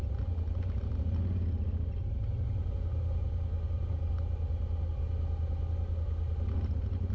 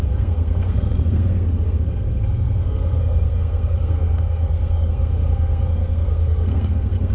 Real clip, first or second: first